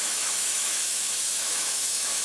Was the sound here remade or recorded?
remade